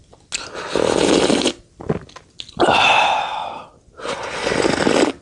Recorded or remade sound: recorded